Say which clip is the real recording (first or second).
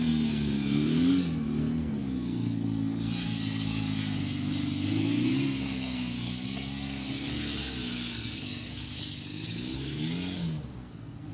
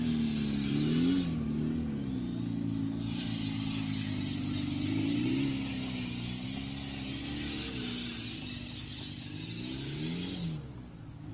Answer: second